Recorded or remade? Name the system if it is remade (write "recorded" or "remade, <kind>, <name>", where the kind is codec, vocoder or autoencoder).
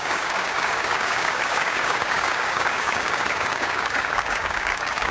remade, codec, DAC